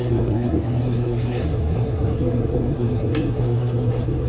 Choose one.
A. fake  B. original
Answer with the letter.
A